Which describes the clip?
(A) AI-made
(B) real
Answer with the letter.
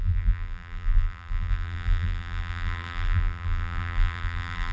A